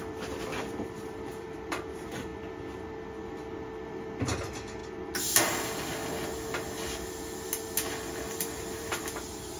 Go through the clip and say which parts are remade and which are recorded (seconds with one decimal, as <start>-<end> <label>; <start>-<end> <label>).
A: 0.0-2.3 remade; 2.3-3.1 recorded; 3.1-4.8 remade; 4.8-8.0 recorded; 8.0-9.6 remade